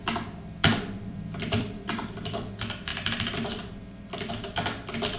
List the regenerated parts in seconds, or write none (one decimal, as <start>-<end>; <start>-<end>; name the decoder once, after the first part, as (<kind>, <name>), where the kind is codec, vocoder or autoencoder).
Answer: 0.6-2.5 (vocoder, BigVGAN v2); 2.9-4.3